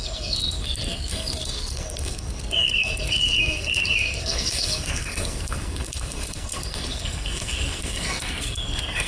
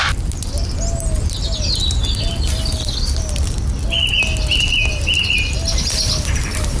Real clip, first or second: second